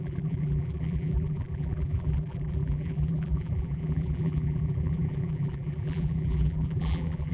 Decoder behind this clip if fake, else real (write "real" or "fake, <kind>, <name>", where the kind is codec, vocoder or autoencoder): fake, vocoder, BigVGAN v2